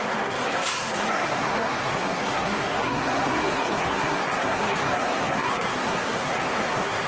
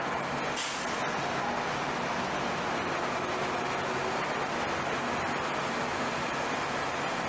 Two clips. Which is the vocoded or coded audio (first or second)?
first